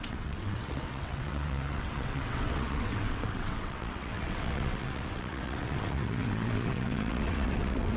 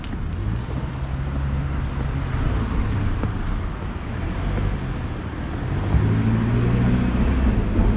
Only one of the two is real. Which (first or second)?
second